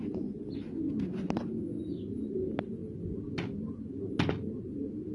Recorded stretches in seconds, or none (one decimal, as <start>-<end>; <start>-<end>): 0.0-5.1